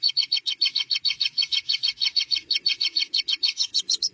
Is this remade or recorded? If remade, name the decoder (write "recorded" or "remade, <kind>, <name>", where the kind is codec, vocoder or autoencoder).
remade, vocoder, Vocos